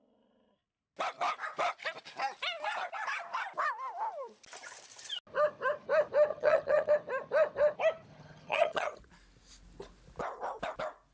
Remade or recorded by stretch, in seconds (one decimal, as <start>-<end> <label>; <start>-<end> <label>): 0.0-6.3 recorded; 6.3-6.9 remade; 6.9-8.1 recorded; 8.1-9.0 remade; 9.0-11.1 recorded